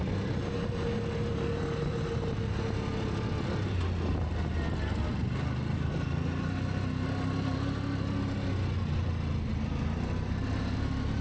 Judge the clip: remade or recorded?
recorded